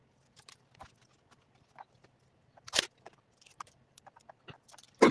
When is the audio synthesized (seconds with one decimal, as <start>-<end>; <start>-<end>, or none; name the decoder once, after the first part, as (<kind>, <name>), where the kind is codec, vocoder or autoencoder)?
none